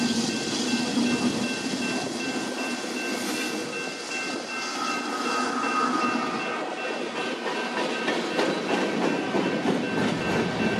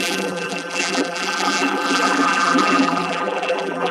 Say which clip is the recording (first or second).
first